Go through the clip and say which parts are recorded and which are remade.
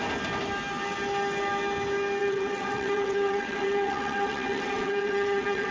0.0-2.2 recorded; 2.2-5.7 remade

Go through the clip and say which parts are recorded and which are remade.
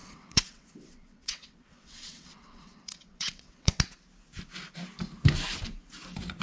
0.0-3.8 remade; 3.8-6.4 recorded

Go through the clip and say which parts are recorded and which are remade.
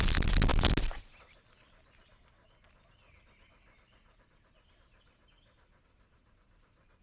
0.0-7.0 recorded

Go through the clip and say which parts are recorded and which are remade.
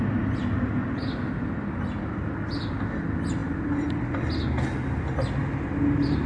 0.0-6.3 recorded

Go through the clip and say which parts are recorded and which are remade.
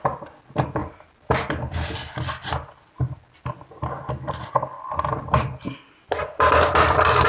0.0-7.3 recorded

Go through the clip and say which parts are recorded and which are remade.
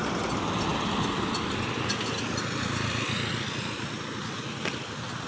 0.0-5.3 recorded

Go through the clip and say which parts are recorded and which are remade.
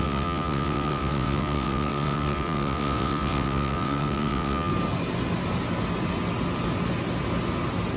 0.0-4.7 remade; 4.7-8.0 recorded